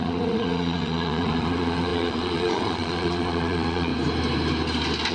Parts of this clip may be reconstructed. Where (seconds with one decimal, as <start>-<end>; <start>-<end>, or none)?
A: 0.0-3.9